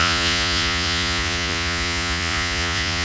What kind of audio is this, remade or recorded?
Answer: remade